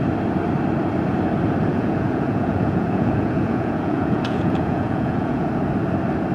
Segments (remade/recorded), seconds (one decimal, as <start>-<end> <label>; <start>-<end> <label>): 0.0-1.7 recorded; 1.7-5.5 remade; 5.5-6.3 recorded